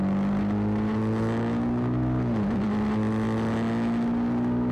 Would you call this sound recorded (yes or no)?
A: yes